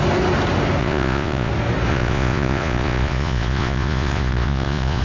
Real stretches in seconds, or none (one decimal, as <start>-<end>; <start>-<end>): 0.0-0.8; 1.5-1.9